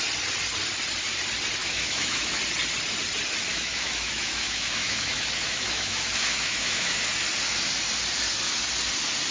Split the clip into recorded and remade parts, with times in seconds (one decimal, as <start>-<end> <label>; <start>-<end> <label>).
0.0-1.6 recorded; 1.6-2.4 remade; 2.4-3.5 recorded; 3.5-7.1 remade; 7.1-9.3 recorded